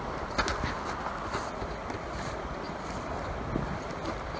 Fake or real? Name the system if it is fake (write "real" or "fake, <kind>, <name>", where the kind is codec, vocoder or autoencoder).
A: real